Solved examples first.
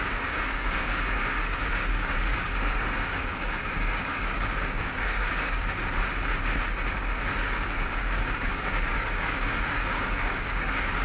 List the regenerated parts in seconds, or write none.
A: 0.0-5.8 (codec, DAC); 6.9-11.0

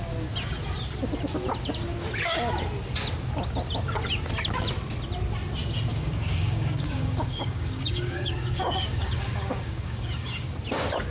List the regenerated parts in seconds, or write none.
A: 5.9-10.5 (codec, DAC)

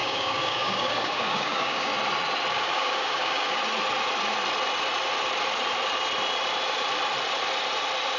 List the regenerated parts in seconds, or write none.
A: 0.0-1.9 (codec, DAC); 2.5-3.6